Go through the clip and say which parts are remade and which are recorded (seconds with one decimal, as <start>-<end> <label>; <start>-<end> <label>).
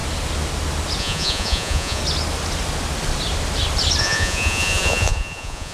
0.0-1.0 recorded; 1.0-2.0 remade; 2.0-4.0 recorded; 4.0-5.7 remade